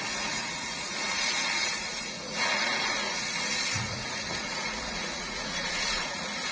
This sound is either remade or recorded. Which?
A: remade